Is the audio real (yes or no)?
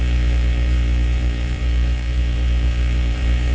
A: no